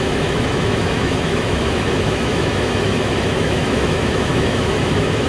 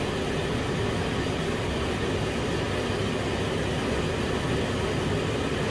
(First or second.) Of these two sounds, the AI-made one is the first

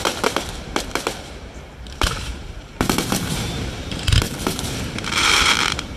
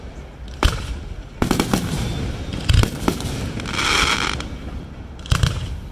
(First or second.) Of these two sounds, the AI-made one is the first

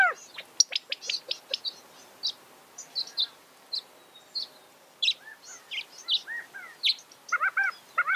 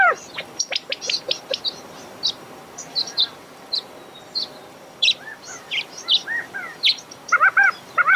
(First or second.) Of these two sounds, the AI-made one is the second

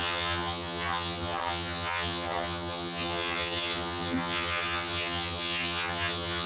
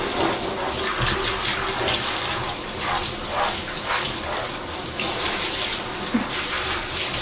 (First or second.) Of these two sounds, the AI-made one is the first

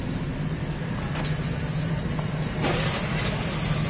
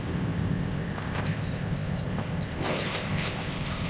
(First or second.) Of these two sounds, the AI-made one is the second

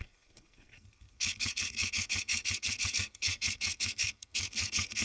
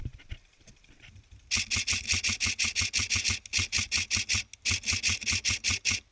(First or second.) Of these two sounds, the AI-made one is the first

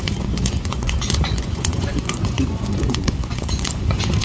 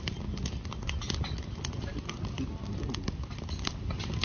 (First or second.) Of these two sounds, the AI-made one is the first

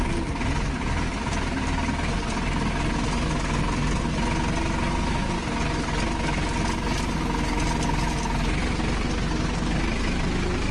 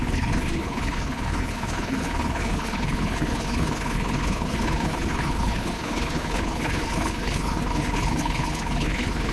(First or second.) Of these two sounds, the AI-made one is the second